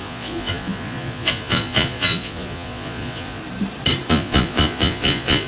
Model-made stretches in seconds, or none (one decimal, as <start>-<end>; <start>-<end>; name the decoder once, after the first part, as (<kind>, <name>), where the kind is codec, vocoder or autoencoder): 0.0-3.4 (vocoder, Vocos); 4.1-5.5

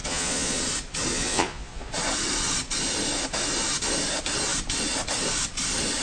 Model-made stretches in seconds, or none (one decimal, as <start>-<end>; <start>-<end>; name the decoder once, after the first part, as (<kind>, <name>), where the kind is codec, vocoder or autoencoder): 0.0-0.6 (vocoder, Vocos); 1.1-1.9

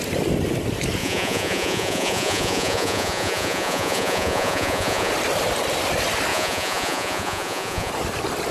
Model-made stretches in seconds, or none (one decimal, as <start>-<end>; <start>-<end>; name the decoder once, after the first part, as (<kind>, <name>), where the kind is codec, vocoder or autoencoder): 1.0-5.1 (vocoder, Vocos); 6.3-7.9

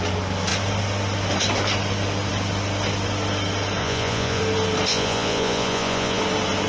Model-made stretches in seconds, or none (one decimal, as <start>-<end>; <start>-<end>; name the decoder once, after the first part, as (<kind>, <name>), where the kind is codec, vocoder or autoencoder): 3.8-4.4 (vocoder, Vocos); 4.9-6.2

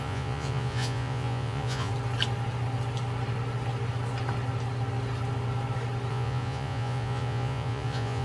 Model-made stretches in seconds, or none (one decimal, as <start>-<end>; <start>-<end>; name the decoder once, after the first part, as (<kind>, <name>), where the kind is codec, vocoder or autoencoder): 0.0-1.9 (vocoder, Vocos); 6.1-8.2

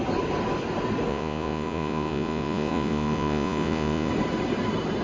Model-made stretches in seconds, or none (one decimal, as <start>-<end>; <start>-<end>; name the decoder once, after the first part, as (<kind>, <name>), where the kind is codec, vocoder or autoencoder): 1.1-4.1 (vocoder, Vocos)